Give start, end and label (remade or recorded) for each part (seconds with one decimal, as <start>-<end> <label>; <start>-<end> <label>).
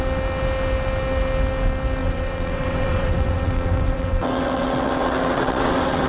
0.0-2.0 recorded; 2.0-6.1 remade